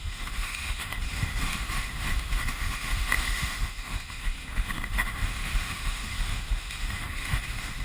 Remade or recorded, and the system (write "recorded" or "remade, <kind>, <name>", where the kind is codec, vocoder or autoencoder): remade, autoencoder, DAC-VAE